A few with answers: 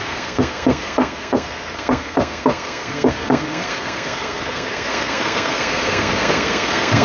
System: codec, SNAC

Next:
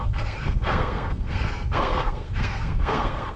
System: codec, SNAC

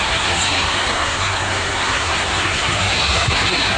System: codec, SNAC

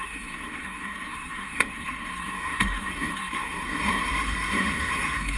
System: codec, SNAC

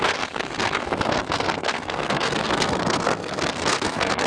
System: codec, SNAC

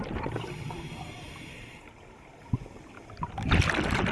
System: none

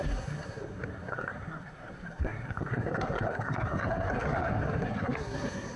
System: codec, SNAC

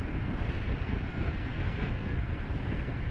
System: codec, SNAC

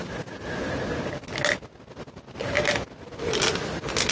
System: none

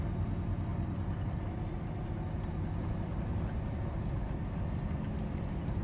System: none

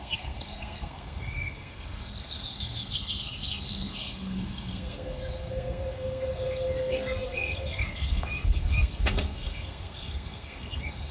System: codec, SNAC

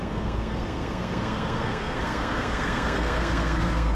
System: codec, SNAC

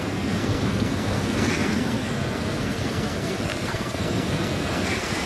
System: codec, SNAC